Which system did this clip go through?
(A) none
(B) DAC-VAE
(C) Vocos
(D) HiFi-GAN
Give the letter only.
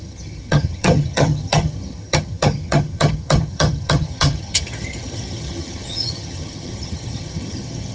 D